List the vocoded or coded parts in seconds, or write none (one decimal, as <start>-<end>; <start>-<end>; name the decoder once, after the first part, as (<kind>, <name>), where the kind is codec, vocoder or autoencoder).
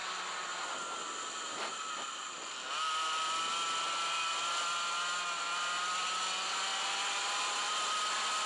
none